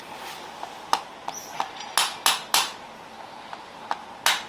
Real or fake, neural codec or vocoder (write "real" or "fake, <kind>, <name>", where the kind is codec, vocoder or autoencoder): real